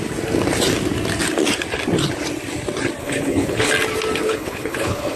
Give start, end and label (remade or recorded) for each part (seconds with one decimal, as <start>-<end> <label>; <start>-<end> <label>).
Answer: 0.0-3.0 recorded; 3.0-3.7 remade; 3.7-4.2 recorded; 4.2-5.2 remade